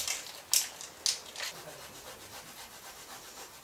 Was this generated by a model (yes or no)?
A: no